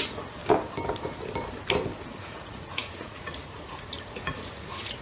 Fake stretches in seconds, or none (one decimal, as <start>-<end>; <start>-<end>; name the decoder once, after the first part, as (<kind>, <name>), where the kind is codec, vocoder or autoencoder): 0.0-0.4 (vocoder, Vocos); 2.2-5.0